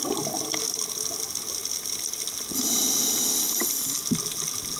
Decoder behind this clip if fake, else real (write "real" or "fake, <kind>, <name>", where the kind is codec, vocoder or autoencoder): real